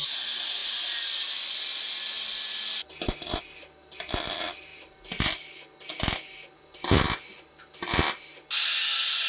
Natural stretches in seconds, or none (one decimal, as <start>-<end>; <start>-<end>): 0.0-9.3